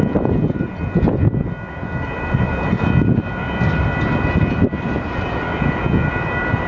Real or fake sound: real